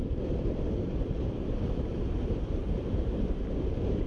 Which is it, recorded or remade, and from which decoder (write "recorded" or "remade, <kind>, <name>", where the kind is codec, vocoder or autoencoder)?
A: remade, vocoder, BigVGAN v2